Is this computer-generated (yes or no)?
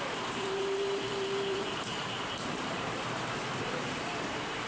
yes